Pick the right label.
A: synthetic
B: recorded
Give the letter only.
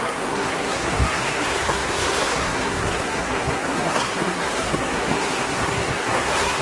A